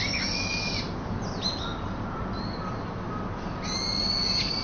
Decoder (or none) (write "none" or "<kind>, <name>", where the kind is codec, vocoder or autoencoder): none